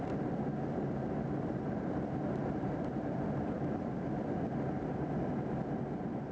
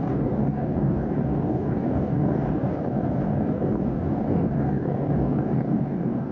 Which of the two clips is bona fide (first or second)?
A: first